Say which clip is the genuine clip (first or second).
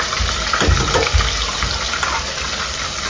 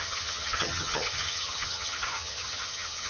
first